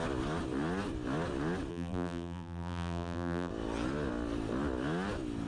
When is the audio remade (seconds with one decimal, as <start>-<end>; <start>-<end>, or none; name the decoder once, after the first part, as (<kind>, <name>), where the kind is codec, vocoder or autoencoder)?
1.7-3.5 (vocoder, BigVGAN v2)